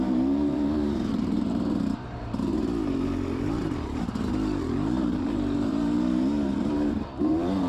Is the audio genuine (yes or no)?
no